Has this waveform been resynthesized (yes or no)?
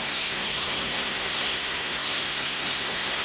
yes